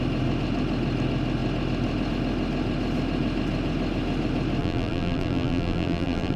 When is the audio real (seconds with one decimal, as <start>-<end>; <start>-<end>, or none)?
0.0-4.6